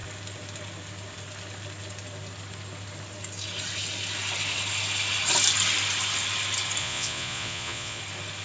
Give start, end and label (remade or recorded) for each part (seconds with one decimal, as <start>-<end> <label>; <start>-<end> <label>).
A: 0.0-6.8 recorded; 6.8-8.0 remade; 8.0-8.4 recorded